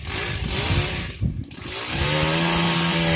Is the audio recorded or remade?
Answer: recorded